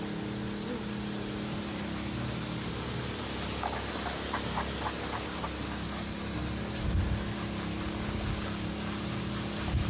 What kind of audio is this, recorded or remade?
recorded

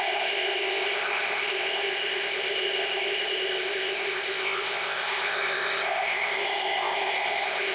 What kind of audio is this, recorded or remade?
remade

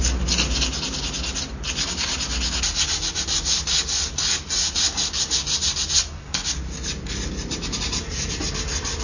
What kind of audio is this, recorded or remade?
recorded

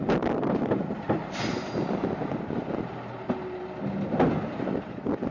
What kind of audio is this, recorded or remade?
recorded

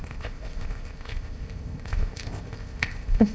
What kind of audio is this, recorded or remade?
remade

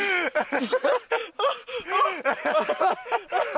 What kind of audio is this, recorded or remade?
recorded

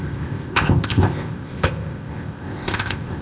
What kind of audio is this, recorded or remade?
remade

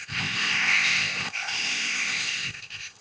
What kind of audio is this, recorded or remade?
remade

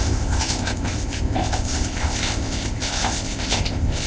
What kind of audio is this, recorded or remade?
remade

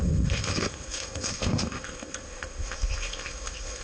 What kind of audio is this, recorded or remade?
remade